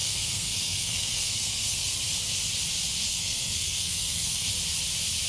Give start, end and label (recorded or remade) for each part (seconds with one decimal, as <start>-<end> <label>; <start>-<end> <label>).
0.0-2.0 remade; 2.0-3.1 recorded; 3.1-4.5 remade; 4.5-5.3 recorded